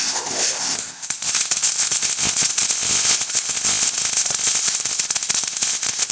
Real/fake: fake